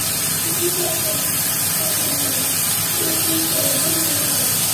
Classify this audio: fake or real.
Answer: real